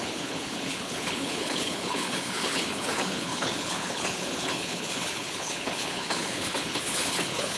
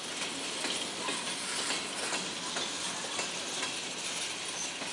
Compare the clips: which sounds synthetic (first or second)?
first